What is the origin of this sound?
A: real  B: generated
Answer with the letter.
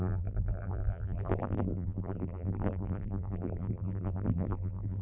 B